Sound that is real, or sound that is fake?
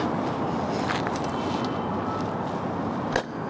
real